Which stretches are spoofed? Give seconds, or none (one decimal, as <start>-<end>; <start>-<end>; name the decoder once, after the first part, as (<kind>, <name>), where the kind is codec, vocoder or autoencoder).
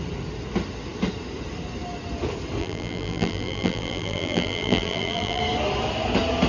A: 2.6-5.4 (vocoder, BigVGAN v2)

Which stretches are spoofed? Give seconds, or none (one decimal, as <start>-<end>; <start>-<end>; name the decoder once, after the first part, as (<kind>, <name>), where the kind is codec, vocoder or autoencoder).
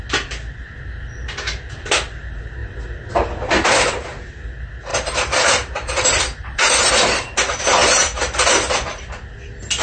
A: 4.9-6.9 (vocoder, BigVGAN v2); 7.8-9.1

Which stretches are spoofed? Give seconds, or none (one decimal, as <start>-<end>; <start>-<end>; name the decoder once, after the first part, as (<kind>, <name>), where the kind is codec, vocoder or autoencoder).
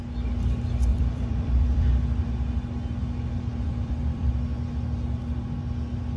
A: 0.9-1.9 (vocoder, BigVGAN v2); 3.5-4.3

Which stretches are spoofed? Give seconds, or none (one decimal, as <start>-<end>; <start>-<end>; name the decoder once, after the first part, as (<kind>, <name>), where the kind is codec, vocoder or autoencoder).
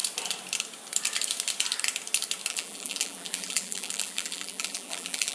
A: 2.5-5.3 (vocoder, BigVGAN v2)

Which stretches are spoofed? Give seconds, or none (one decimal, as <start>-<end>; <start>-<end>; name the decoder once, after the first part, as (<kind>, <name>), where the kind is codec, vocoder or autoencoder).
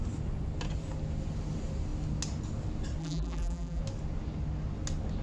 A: 3.0-3.8 (vocoder, BigVGAN v2)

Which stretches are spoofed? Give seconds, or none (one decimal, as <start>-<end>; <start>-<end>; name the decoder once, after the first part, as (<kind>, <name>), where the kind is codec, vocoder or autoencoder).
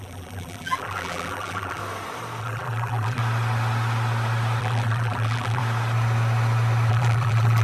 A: 0.0-1.8 (vocoder, BigVGAN v2); 2.4-3.2; 4.6-5.6; 6.9-7.6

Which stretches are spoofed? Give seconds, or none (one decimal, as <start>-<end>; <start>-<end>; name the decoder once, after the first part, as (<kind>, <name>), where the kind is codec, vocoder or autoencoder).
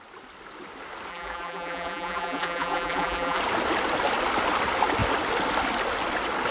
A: 1.1-3.4 (vocoder, BigVGAN v2)